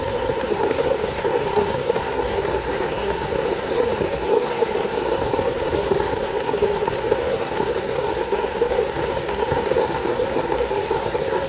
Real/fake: fake